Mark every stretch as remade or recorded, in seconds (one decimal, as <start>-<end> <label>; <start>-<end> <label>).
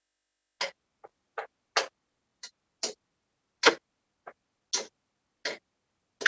0.0-6.3 recorded